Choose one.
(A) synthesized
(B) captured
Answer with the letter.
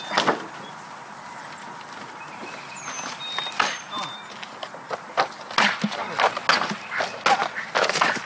B